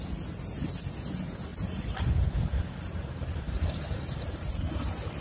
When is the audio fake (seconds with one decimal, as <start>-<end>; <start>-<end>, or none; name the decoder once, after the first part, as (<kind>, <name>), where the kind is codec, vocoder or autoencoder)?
1.5-4.5 (vocoder, BigVGAN v2)